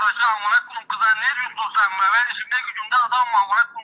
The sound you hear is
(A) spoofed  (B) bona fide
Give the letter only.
B